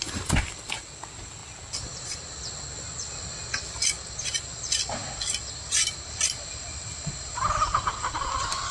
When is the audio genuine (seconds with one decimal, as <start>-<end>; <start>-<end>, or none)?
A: 1.4-3.6